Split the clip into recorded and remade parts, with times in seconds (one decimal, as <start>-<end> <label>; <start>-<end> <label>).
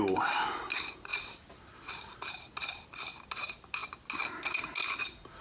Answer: 0.0-1.1 recorded; 1.1-1.9 remade; 1.9-5.4 recorded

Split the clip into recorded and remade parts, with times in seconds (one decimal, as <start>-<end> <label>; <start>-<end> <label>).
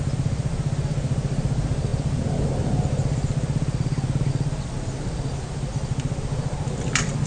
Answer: 0.0-7.3 recorded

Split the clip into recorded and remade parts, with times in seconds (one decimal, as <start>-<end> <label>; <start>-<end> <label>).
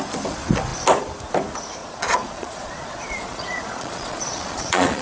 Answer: 0.0-1.8 recorded; 1.8-5.0 remade